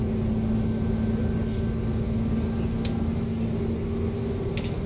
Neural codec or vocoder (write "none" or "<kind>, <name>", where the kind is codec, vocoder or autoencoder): none